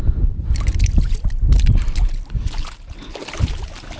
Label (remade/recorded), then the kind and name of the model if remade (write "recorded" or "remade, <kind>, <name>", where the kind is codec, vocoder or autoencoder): recorded